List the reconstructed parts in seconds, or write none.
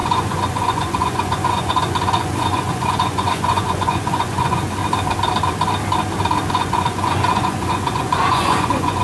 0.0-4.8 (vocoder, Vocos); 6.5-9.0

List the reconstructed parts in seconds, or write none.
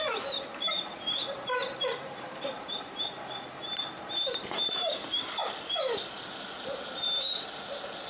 0.6-5.4 (vocoder, BigVGAN v2); 6.2-8.1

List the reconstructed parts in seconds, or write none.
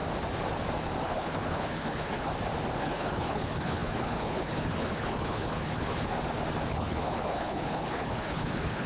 1.0-2.3 (codec, HILCodec); 2.8-6.0; 6.7-8.9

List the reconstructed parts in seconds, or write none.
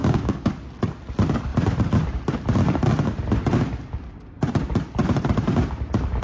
0.0-0.5 (codec, DAC)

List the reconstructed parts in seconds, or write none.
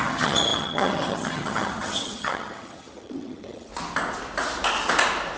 0.0-3.7 (vocoder, HiFi-GAN)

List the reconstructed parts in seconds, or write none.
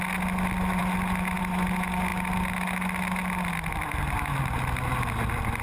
none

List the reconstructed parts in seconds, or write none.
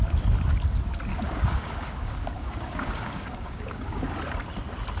1.1-4.1 (codec, DAC)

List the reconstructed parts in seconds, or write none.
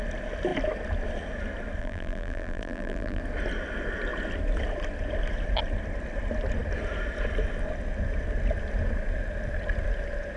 1.8-3.2 (vocoder, BigVGAN v2)